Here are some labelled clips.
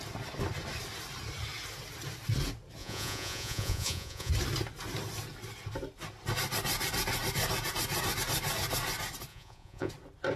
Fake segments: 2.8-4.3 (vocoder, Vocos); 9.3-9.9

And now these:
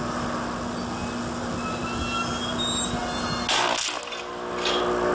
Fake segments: none

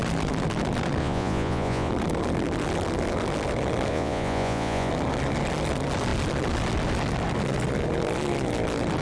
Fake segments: 1.0-1.9 (vocoder, Vocos); 3.9-4.9

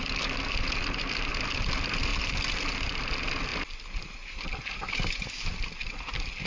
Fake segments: none